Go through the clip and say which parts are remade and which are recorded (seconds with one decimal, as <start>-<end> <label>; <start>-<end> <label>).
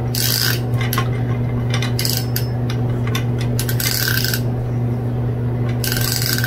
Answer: 0.0-6.5 recorded